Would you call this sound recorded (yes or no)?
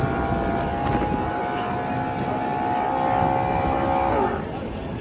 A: yes